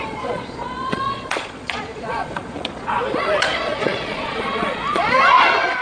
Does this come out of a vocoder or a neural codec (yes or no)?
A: yes